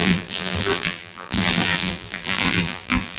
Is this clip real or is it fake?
fake